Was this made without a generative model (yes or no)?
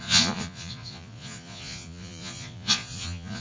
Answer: no